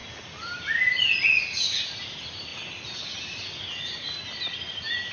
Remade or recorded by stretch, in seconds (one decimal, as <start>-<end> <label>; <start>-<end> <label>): 0.0-5.1 recorded